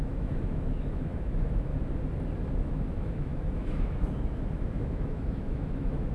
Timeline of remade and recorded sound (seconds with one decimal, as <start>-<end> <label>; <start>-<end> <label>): 0.0-1.7 remade; 1.7-2.6 recorded; 2.6-6.1 remade